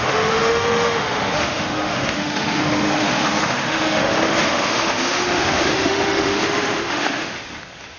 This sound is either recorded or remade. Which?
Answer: remade